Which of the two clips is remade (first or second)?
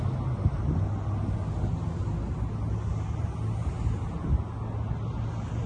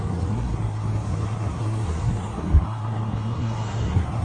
second